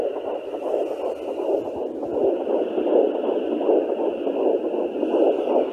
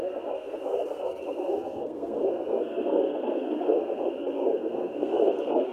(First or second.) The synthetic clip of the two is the second